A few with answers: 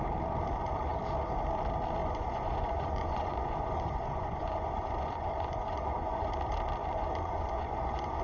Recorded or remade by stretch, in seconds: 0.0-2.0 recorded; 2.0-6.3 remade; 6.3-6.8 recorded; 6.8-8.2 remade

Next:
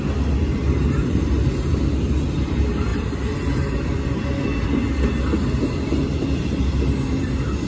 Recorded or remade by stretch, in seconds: 0.0-7.7 recorded